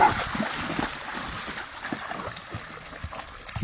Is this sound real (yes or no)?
yes